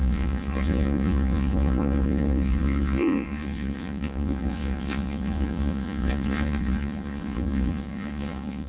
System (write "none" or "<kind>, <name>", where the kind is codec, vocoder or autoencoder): vocoder, Vocos